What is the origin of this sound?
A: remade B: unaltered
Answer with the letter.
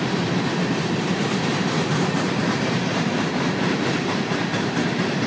A